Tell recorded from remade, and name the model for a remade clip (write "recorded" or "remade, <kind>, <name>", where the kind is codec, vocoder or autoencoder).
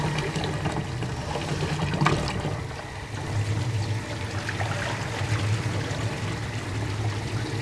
recorded